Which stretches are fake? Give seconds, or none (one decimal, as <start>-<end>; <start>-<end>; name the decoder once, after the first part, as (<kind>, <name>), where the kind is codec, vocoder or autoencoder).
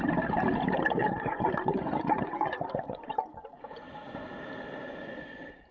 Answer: 1.0-3.2 (vocoder, Vocos); 4.8-5.3